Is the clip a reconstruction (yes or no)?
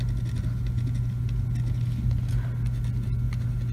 no